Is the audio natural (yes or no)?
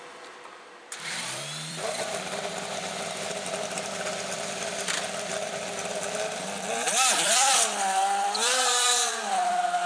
no